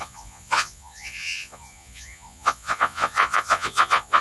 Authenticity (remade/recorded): remade